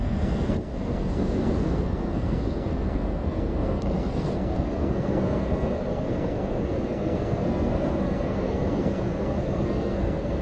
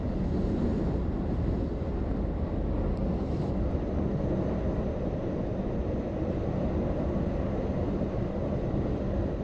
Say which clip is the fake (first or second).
first